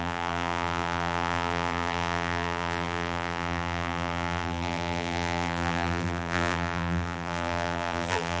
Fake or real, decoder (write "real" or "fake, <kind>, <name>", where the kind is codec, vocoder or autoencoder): fake, vocoder, BigVGAN v2